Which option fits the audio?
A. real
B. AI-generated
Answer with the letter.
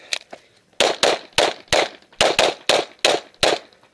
A